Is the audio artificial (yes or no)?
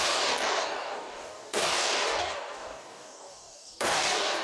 yes